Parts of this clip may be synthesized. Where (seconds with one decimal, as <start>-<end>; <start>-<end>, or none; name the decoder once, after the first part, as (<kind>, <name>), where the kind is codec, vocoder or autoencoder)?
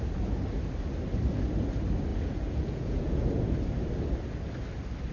2.1-3.3 (vocoder, Vocos)